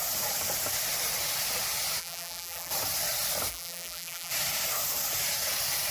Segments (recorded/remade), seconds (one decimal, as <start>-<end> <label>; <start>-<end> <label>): 0.0-2.0 recorded; 2.0-2.7 remade; 2.7-3.5 recorded; 3.5-4.3 remade; 4.3-5.9 recorded